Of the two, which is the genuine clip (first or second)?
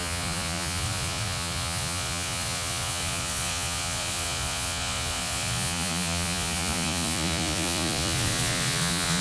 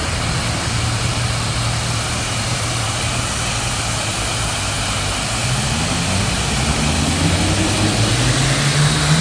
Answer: second